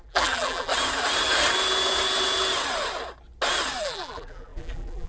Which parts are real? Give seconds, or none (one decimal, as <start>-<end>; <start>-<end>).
0.7-3.8

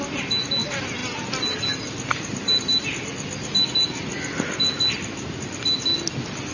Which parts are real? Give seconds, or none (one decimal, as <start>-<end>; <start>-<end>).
0.0-6.5

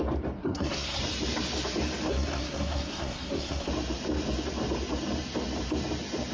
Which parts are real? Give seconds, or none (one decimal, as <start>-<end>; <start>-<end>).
0.0-0.4; 1.0-2.1; 3.7-6.3

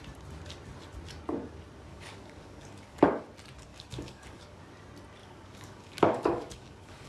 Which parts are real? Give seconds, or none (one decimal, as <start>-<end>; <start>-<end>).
0.0-1.9; 3.2-3.7; 4.6-5.2

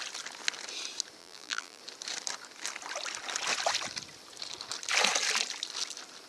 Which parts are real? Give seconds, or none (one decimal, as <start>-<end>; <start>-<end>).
0.0-1.2; 1.8-6.3

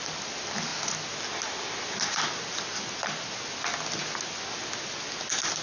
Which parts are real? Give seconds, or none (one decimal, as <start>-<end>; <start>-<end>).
0.0-5.6

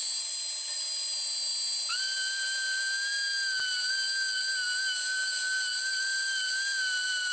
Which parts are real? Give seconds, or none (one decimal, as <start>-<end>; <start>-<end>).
0.0-7.3